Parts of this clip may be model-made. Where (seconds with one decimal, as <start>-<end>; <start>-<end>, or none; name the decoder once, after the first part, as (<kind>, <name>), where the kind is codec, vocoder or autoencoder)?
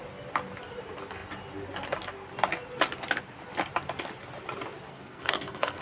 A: 4.9-5.8 (codec, SNAC)